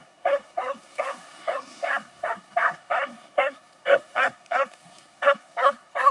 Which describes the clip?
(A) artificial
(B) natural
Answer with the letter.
A